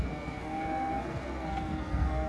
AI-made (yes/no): yes